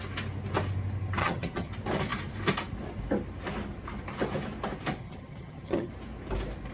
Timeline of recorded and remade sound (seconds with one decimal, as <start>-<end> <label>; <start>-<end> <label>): 0.0-1.2 recorded; 1.2-1.7 remade; 1.7-5.0 recorded; 5.0-5.9 remade; 5.9-6.7 recorded